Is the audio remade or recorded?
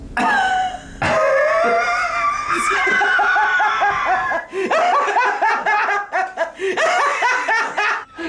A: recorded